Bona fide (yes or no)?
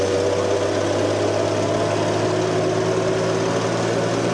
yes